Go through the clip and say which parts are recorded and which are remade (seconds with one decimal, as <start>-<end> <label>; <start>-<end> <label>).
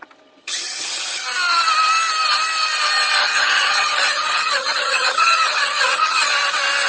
0.0-0.4 recorded; 0.4-1.2 remade; 1.2-3.2 recorded; 3.2-6.3 remade; 6.3-6.9 recorded